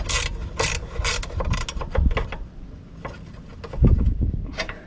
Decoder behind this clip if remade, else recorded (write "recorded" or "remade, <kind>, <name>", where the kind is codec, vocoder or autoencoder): recorded